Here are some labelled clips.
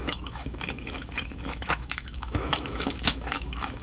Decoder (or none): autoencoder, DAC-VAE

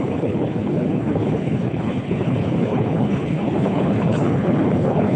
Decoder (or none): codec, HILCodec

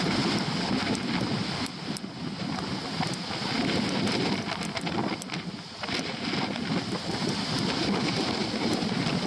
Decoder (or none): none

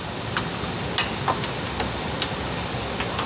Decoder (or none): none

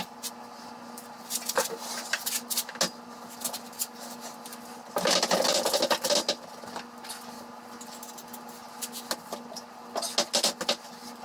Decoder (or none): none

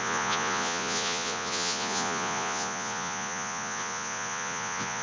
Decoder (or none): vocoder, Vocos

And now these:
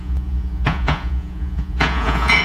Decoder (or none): vocoder, Vocos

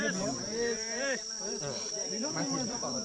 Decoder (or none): vocoder, BigVGAN v2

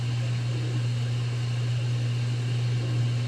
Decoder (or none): none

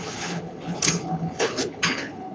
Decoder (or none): codec, HILCodec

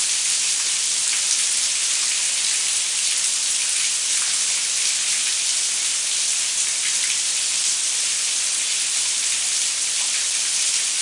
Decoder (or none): none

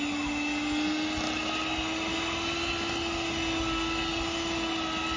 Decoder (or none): none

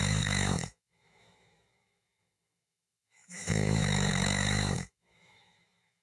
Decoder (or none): autoencoder, DAC-VAE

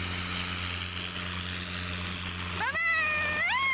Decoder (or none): none